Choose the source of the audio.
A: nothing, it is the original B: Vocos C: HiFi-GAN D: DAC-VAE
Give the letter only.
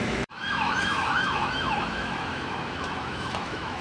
D